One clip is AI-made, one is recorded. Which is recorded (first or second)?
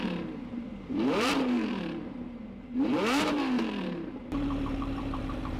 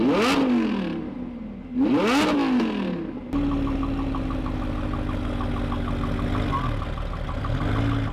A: second